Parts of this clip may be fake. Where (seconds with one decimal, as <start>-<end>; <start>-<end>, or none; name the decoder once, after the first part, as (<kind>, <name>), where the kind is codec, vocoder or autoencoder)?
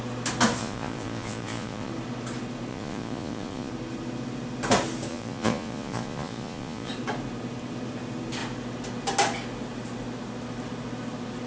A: 0.6-1.9 (vocoder, Vocos); 2.7-3.7; 5.1-6.9